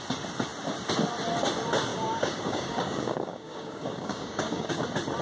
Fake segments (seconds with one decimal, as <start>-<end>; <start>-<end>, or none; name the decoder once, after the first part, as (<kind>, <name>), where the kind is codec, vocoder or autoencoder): 1.9-4.8 (codec, DAC)